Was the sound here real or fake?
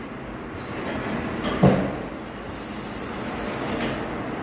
real